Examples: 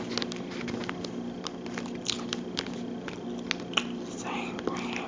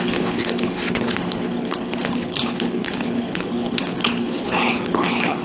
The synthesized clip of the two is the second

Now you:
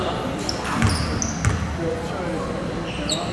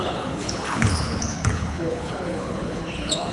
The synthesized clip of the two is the second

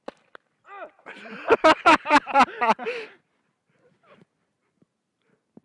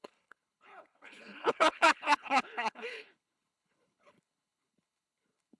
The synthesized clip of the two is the second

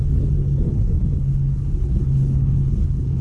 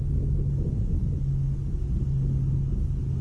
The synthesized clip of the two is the first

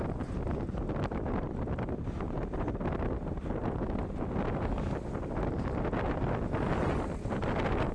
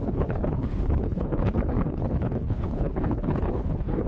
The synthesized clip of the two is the second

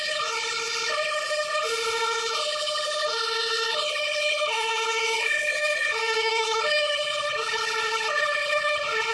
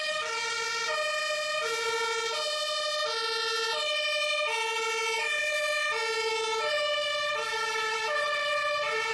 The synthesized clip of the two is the first